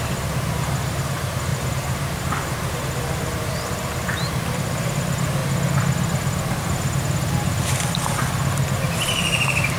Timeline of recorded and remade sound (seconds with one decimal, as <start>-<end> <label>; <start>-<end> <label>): 0.0-5.4 remade; 5.4-6.6 recorded; 6.6-9.8 remade